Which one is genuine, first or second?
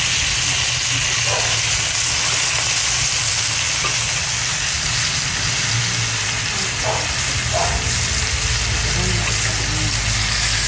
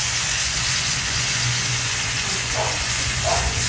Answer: first